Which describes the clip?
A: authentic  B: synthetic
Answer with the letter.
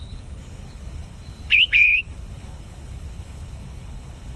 B